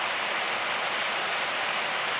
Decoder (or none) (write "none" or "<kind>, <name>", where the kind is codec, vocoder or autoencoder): none